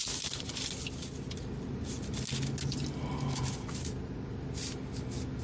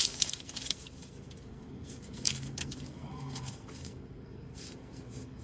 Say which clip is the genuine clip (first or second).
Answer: first